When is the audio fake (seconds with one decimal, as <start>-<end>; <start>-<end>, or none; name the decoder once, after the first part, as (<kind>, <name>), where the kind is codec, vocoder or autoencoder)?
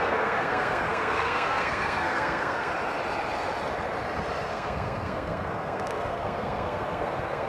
0.0-2.7 (codec, SNAC); 4.5-7.5